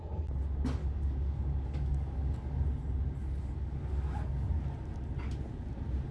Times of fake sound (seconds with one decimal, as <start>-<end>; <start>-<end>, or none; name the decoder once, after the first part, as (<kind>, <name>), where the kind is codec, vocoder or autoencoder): 0.8-2.6 (codec, DAC); 3.2-4.5